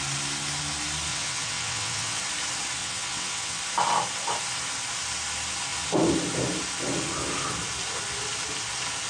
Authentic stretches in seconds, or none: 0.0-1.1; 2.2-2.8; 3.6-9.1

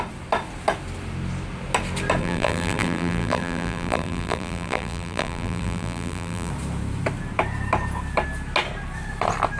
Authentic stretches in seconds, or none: 0.0-2.2; 6.5-9.6

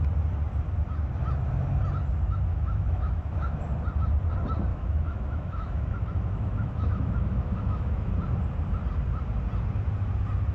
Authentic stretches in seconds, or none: 0.0-2.5; 3.6-4.7; 8.1-10.5

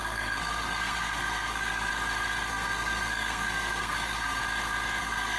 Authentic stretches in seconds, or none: 1.9-2.5; 4.4-5.0

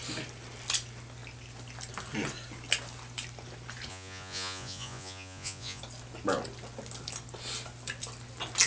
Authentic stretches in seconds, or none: 0.0-3.9; 5.8-8.7

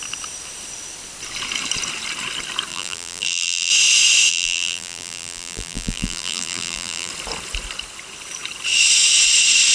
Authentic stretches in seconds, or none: 0.0-2.7; 3.7-4.3; 7.1-9.7